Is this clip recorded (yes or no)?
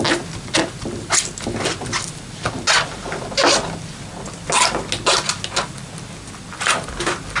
yes